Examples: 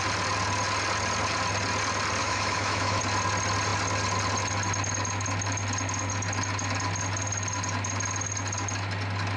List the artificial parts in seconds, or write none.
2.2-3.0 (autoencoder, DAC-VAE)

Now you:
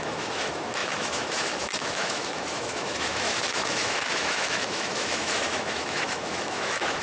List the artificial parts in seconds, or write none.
0.0-7.0 (autoencoder, DAC-VAE)

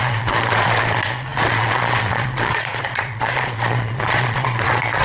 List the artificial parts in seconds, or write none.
0.0-5.0 (vocoder, Vocos)

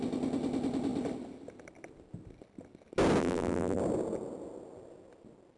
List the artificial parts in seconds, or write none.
3.2-3.8 (vocoder, BigVGAN v2)

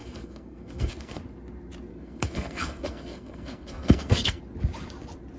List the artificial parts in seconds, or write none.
0.0-1.2 (codec, SNAC); 1.9-4.4

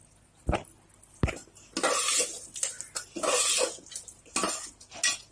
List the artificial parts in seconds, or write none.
none